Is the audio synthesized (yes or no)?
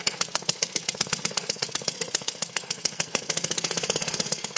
yes